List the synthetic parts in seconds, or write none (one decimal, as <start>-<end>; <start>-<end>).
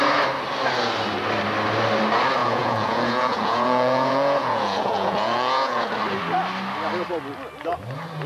2.4-5.9